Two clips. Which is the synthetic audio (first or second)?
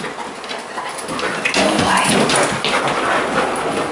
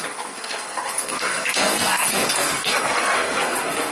second